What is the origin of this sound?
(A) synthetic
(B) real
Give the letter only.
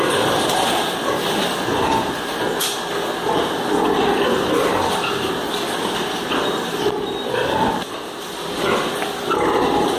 A